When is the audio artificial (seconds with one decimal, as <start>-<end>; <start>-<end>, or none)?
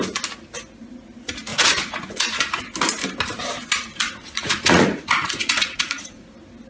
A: 1.5-2.6; 3.9-6.3